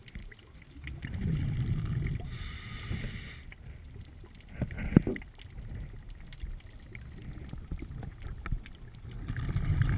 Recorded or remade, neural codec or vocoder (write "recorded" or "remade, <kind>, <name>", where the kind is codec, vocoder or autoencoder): recorded